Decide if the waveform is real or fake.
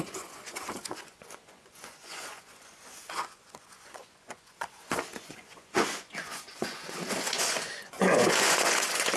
fake